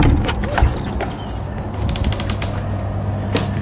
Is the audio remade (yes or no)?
no